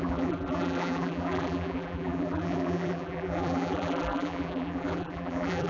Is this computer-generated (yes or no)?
yes